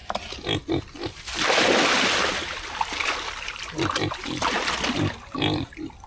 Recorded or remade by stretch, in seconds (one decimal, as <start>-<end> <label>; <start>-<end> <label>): 0.0-6.1 recorded

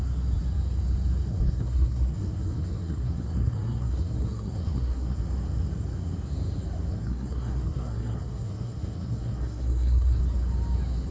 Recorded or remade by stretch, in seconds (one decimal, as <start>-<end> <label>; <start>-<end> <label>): 0.0-1.3 recorded; 1.3-5.2 remade; 5.2-6.9 recorded; 6.9-10.2 remade; 10.2-11.1 recorded

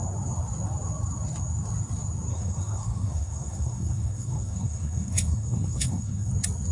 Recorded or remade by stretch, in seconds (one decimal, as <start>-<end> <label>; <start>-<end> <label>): 0.0-2.3 recorded; 2.3-6.3 remade; 6.3-6.7 recorded

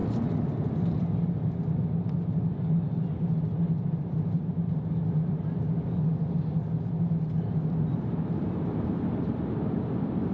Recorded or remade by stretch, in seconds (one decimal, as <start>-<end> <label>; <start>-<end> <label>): 0.0-10.3 recorded

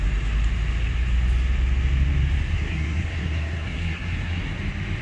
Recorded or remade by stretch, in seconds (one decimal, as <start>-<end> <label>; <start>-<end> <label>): 0.0-2.5 recorded; 2.5-4.6 remade; 4.6-5.0 recorded

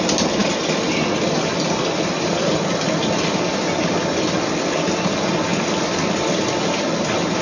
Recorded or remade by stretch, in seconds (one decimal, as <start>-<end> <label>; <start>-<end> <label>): 0.0-7.4 recorded

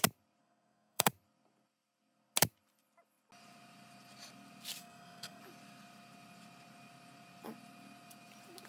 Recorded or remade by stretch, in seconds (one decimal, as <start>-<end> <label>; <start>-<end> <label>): 0.0-0.4 recorded; 0.4-1.1 remade; 1.1-4.8 recorded; 4.8-5.4 remade; 5.4-8.7 recorded

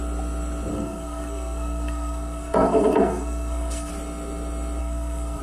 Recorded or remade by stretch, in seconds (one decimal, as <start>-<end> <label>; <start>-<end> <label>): 0.0-0.7 recorded; 0.7-3.9 remade; 3.9-4.8 recorded; 4.8-5.4 remade